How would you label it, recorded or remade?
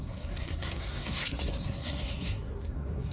remade